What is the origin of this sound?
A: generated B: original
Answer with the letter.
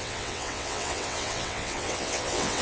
A